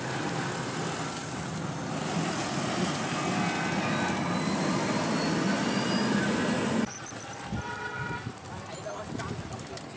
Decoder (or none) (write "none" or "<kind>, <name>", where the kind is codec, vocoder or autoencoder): none